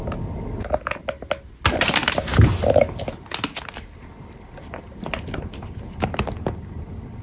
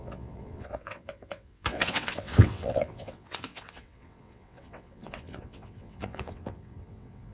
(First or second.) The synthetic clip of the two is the second